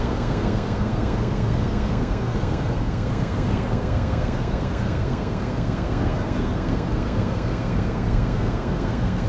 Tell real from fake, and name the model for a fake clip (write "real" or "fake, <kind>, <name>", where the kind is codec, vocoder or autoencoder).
fake, codec, SNAC